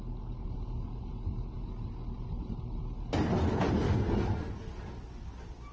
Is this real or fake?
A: real